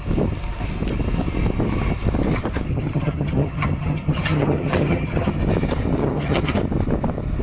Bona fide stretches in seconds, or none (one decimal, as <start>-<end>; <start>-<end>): 0.0-2.7; 5.4-6.0; 6.6-7.4